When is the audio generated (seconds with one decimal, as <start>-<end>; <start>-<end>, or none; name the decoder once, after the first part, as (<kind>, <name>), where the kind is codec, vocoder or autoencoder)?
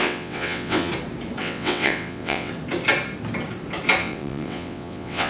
0.0-0.9 (vocoder, WaveNeXt); 1.4-2.5; 4.0-5.3